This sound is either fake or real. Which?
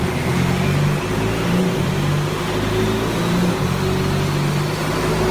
real